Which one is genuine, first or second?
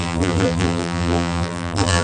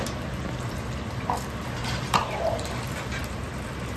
second